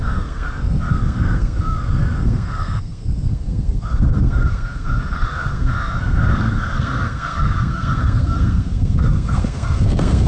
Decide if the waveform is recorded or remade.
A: remade